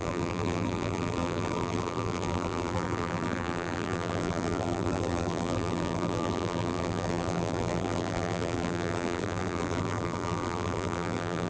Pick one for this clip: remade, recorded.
remade